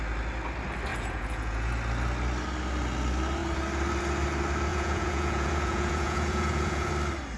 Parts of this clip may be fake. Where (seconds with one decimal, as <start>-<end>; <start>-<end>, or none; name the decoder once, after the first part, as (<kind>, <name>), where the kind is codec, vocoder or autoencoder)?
0.9-1.7 (vocoder, Vocos); 4.7-6.9